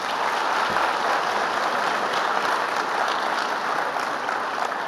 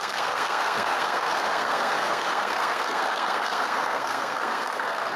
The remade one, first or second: second